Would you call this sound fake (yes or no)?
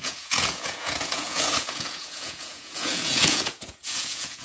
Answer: yes